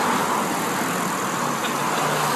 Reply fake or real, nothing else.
real